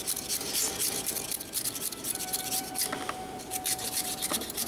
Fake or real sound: fake